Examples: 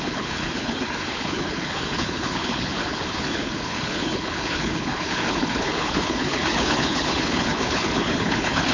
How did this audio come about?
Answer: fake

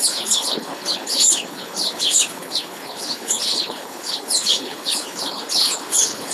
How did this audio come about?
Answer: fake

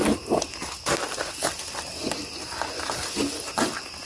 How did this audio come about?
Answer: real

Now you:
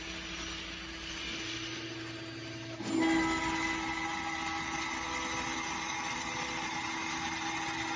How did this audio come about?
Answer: real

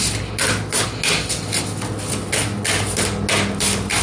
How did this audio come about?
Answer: real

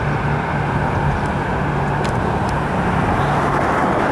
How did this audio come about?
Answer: real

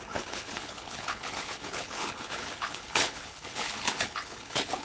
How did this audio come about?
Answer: fake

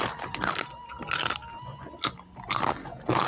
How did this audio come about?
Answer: real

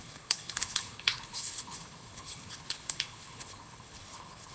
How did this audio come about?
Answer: fake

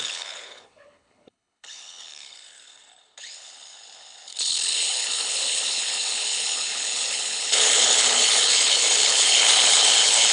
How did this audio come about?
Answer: fake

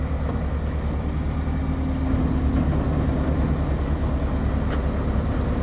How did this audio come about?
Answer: real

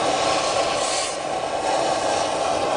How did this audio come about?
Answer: real